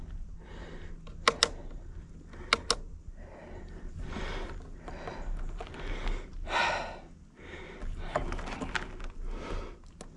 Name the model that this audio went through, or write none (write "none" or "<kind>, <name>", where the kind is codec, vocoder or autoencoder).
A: none